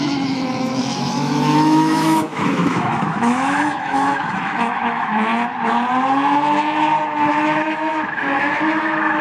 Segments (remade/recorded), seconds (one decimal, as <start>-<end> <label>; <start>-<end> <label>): 0.0-5.3 remade; 5.3-7.3 recorded; 7.3-9.2 remade